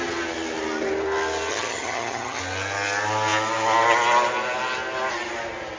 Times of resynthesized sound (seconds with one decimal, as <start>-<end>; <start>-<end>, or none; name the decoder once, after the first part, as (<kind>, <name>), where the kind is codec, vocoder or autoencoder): 1.5-2.4 (vocoder, HiFi-GAN)